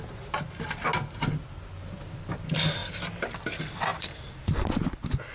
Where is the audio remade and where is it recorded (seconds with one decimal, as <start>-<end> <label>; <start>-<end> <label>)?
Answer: 0.0-5.3 recorded